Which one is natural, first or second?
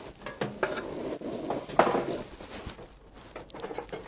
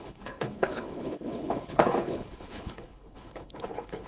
first